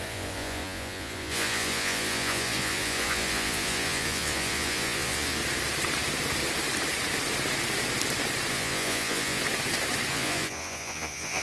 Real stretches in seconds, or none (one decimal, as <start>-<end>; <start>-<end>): 5.4-8.5; 9.4-10.1